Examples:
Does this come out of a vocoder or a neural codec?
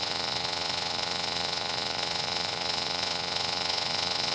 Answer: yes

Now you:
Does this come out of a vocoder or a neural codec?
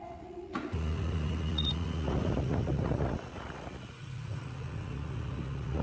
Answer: yes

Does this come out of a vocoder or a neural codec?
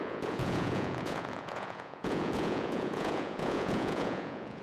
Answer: yes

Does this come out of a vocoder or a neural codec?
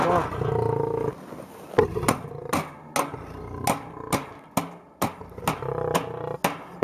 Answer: no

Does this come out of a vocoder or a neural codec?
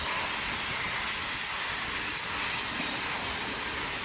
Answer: no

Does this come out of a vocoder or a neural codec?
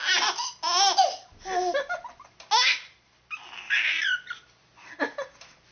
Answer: no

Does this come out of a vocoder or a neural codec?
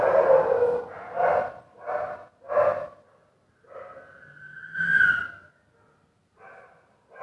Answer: no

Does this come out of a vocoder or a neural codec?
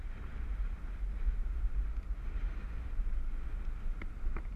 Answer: no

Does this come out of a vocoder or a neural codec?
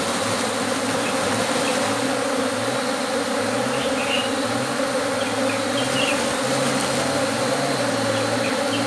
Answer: no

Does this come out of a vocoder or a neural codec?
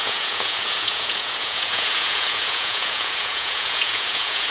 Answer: yes